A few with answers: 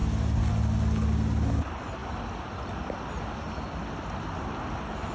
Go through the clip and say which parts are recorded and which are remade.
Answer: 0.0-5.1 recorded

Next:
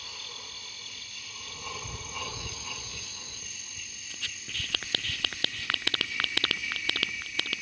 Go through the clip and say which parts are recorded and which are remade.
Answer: 0.0-2.2 recorded; 2.2-3.4 remade; 3.4-7.6 recorded